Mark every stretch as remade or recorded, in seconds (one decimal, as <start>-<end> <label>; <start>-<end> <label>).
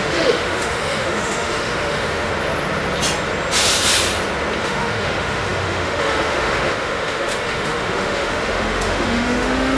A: 0.0-2.3 remade; 2.3-4.6 recorded; 4.6-9.8 remade